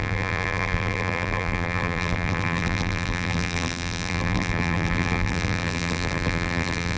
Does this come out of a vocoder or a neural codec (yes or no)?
yes